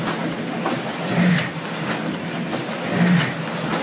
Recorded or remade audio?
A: recorded